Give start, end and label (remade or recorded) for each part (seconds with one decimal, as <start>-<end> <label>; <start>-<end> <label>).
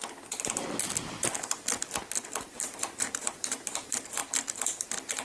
0.0-2.4 recorded; 2.4-4.2 remade; 4.2-4.8 recorded; 4.8-5.2 remade